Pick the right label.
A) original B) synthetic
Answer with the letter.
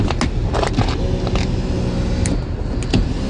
A